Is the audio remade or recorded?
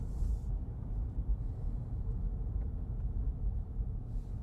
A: remade